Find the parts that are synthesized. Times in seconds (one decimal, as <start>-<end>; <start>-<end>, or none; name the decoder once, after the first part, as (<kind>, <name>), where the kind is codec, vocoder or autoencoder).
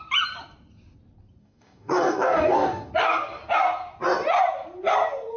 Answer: 1.4-2.9 (codec, DAC)